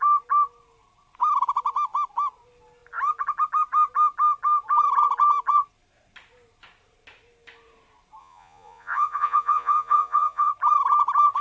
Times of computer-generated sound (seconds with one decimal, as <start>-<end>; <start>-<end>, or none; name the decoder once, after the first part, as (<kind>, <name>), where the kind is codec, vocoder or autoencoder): 8.2-10.5 (vocoder, Vocos)